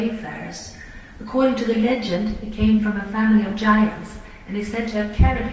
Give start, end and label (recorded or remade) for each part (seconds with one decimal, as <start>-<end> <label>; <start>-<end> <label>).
0.0-0.6 remade; 0.6-1.6 recorded; 1.6-5.5 remade